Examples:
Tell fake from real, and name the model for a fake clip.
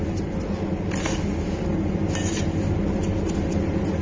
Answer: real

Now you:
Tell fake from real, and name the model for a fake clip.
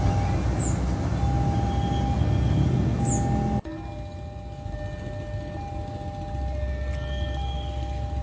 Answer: real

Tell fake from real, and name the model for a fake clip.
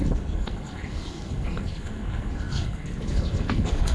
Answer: fake, codec, SNAC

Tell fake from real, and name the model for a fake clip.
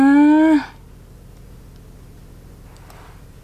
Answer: real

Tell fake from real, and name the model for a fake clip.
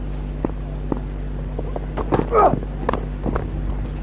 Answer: real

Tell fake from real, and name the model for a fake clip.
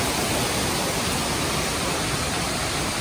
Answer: real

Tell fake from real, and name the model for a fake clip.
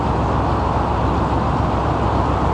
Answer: real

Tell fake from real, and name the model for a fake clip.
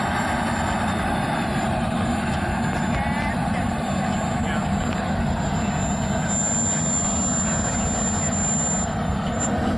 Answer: real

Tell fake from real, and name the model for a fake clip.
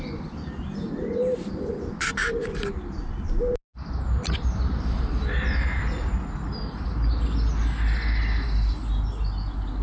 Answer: real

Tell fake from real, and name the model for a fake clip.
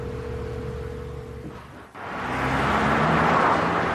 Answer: real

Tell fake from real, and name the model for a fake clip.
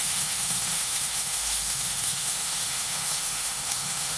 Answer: fake, autoencoder, DAC-VAE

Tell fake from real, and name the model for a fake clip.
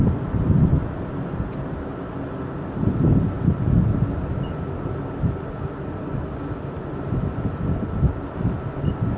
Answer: real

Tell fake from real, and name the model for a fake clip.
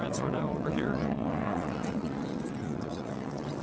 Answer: fake, vocoder, WaveNeXt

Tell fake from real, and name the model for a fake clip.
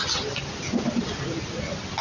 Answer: real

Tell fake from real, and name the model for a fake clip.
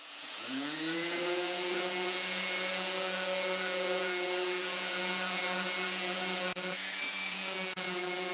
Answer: fake, vocoder, Vocos